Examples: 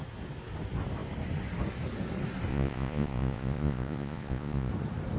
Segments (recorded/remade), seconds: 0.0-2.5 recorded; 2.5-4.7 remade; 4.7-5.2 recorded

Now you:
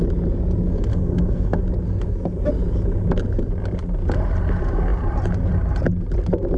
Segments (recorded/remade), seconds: 0.0-0.9 recorded; 0.9-1.6 remade; 1.6-6.6 recorded

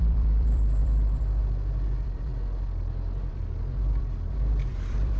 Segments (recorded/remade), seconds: 0.0-2.3 remade; 2.3-3.3 recorded; 3.3-5.2 remade

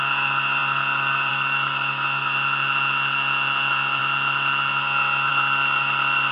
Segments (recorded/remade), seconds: 0.0-6.3 recorded

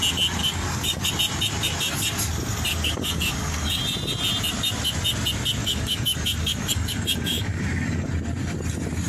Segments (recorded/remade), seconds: 0.0-0.4 recorded; 0.4-1.1 remade; 1.1-2.7 recorded; 2.7-3.8 remade; 3.8-5.6 recorded; 5.6-8.1 remade; 8.1-9.1 recorded

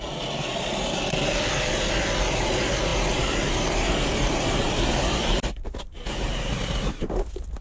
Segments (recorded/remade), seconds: 0.0-7.6 recorded

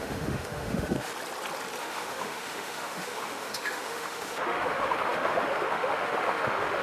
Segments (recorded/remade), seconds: 0.0-1.1 remade; 1.1-1.8 recorded; 1.8-6.8 remade